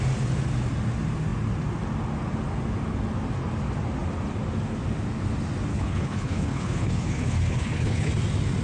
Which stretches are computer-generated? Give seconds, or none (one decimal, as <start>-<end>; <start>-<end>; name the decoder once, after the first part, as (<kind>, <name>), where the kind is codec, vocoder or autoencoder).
5.7-8.1 (codec, HILCodec)